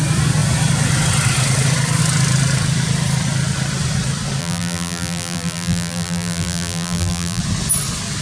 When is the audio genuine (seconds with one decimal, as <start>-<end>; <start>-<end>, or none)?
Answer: 0.0-4.4; 7.4-8.2